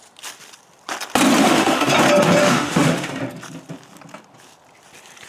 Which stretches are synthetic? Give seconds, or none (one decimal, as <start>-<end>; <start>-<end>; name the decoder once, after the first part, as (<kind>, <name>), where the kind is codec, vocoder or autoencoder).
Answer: 1.4-1.9 (autoencoder, DAC-VAE); 2.4-3.2